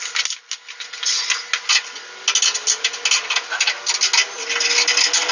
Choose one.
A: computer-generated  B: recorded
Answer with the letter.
B